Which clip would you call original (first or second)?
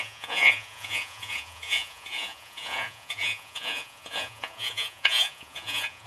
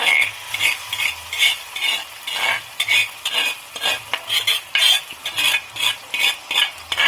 second